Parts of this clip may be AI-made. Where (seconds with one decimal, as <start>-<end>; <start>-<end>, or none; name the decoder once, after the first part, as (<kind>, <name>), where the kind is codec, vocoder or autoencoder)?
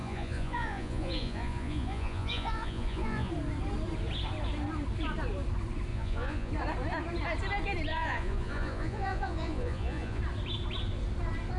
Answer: 0.0-3.3 (vocoder, Vocos); 5.9-6.5; 7.9-10.2